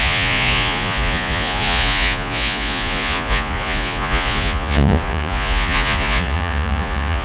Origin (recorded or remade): remade